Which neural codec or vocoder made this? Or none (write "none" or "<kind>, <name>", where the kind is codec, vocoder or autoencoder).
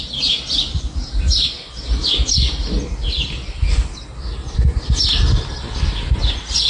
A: none